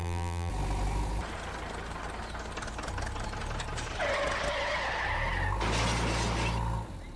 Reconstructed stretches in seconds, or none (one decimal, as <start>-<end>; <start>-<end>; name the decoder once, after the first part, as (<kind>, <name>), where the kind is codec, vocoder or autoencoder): 0.0-0.5 (vocoder, BigVGAN v2)